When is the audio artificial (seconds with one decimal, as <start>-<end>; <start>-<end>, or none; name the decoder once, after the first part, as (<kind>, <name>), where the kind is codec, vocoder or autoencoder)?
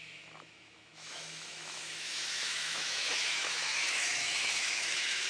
0.0-5.3 (autoencoder, DAC-VAE)